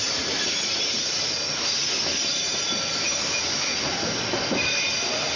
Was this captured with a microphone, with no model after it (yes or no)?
yes